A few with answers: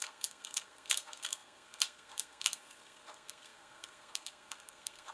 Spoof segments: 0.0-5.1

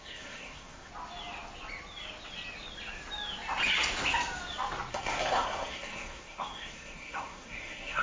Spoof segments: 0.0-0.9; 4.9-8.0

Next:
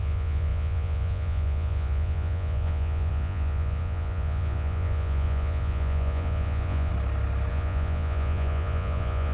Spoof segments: 0.0-6.9; 7.5-9.3